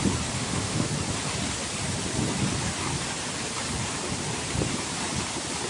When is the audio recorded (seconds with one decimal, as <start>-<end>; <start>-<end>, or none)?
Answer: 0.0-0.4; 0.9-5.7